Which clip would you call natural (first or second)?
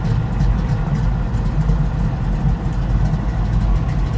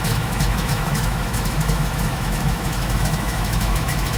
first